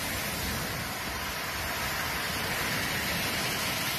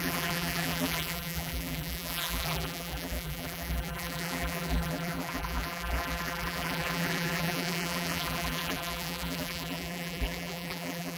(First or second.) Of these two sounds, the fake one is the second